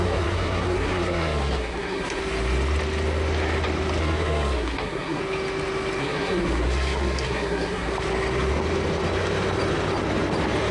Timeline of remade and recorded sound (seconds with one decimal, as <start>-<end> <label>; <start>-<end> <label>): 0.0-2.2 remade; 2.2-4.0 recorded; 4.0-5.2 remade; 5.2-6.0 recorded; 6.0-7.9 remade; 7.9-10.7 recorded

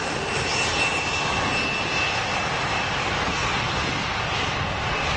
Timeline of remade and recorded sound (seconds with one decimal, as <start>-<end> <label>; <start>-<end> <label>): 0.0-5.2 recorded

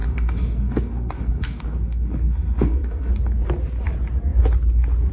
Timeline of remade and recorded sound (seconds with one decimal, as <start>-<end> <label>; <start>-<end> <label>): 0.0-3.1 remade; 3.1-5.1 recorded

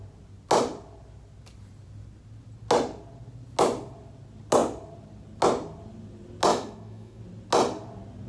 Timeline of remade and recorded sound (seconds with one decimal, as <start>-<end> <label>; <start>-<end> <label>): 0.0-6.5 recorded; 6.5-7.2 remade; 7.2-8.3 recorded

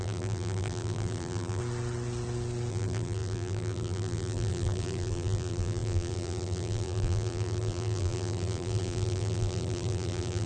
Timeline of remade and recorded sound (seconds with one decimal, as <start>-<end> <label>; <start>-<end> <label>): 0.0-1.6 remade; 1.6-2.7 recorded; 2.7-10.5 remade

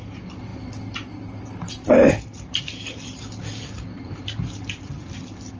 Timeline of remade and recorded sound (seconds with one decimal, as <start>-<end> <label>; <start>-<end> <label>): 0.0-5.6 recorded

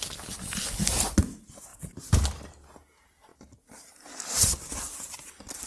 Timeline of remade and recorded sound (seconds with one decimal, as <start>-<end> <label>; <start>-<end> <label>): 0.0-5.7 recorded

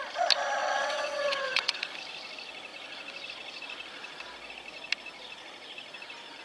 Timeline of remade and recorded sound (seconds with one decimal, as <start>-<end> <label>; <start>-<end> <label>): 0.0-0.6 recorded; 0.6-1.8 remade; 1.8-6.4 recorded